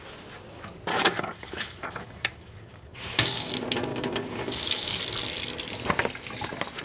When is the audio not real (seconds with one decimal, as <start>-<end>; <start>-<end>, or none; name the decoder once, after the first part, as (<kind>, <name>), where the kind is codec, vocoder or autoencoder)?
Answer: 0.9-3.5 (codec, DAC); 3.9-5.0